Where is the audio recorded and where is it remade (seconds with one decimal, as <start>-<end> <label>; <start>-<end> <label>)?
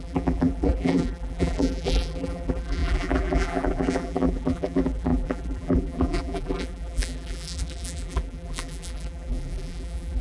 0.0-10.2 remade